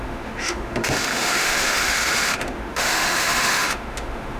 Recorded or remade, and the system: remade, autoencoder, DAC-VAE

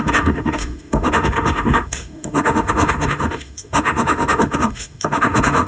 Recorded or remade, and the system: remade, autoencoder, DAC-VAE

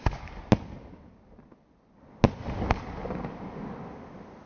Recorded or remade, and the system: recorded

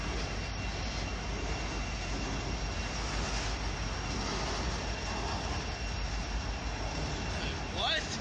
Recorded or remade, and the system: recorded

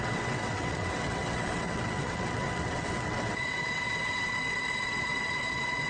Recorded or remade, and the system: remade, vocoder, WaveNeXt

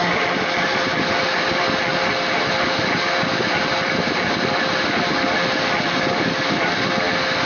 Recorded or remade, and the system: recorded